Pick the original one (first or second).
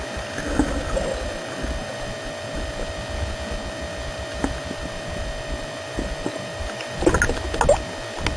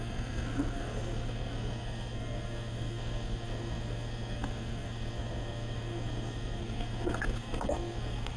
first